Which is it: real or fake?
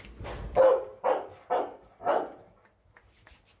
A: real